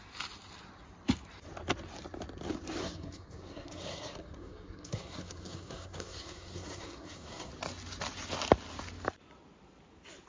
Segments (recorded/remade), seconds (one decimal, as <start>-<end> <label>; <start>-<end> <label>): 0.0-2.8 recorded; 2.8-7.5 remade; 7.5-10.3 recorded